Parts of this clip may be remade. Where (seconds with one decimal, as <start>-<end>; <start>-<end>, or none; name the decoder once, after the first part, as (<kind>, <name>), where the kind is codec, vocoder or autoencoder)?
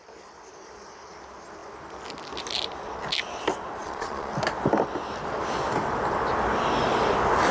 3.8-4.3 (vocoder, Vocos)